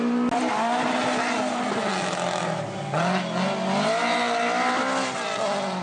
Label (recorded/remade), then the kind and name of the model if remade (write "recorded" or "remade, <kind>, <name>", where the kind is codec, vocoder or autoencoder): recorded